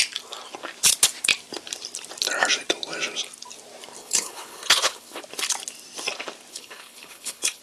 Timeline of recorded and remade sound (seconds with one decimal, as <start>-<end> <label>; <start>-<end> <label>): 0.0-4.0 recorded; 4.0-5.2 remade; 5.2-6.5 recorded; 6.5-7.6 remade